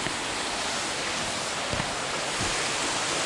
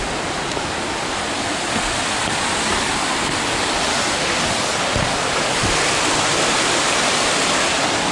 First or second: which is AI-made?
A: second